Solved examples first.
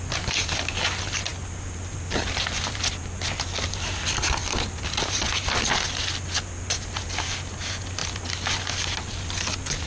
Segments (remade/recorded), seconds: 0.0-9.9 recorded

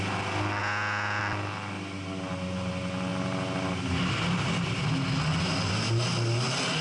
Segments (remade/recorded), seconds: 0.0-0.6 recorded; 0.6-1.2 remade; 1.2-6.8 recorded

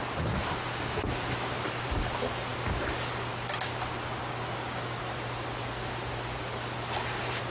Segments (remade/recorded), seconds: 0.0-4.2 recorded; 4.2-5.0 remade; 5.0-7.5 recorded

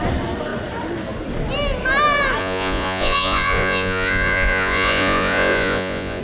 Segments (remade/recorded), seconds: 0.0-2.4 recorded; 2.4-6.2 remade

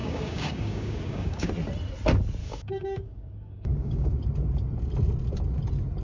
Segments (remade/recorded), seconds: 0.0-1.5 remade; 1.5-2.4 recorded; 2.4-4.1 remade; 4.1-6.0 recorded